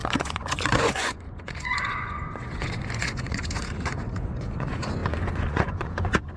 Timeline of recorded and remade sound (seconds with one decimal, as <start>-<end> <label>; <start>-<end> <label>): 0.0-6.4 remade

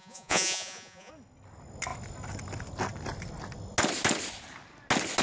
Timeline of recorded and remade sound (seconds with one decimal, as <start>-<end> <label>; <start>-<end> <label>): 0.0-1.1 remade; 1.1-5.2 recorded

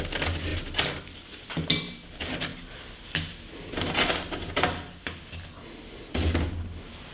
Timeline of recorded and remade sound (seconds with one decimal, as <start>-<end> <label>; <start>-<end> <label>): 0.0-7.1 recorded

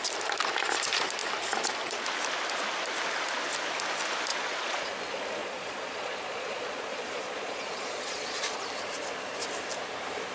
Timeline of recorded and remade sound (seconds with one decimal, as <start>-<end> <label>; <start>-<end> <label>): 0.0-4.3 recorded; 4.3-4.9 remade; 4.9-5.4 recorded; 5.4-8.6 remade; 8.6-10.3 recorded